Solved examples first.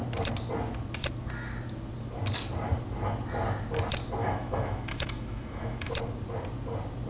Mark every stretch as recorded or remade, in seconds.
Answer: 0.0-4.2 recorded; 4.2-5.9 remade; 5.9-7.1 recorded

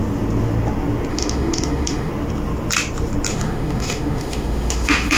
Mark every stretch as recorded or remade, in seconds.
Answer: 0.0-1.1 recorded; 1.1-2.1 remade; 2.1-3.3 recorded; 3.3-5.2 remade